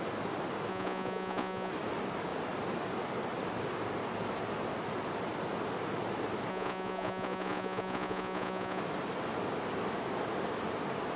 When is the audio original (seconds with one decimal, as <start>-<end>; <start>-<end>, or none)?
0.0-0.7; 1.7-6.5; 8.8-11.2